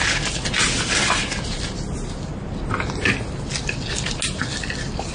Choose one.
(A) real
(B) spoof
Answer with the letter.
A